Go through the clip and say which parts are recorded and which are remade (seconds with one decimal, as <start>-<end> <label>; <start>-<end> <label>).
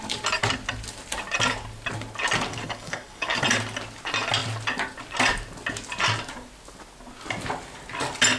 0.0-2.5 recorded; 2.5-3.4 remade; 3.4-8.4 recorded